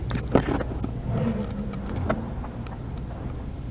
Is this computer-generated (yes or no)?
no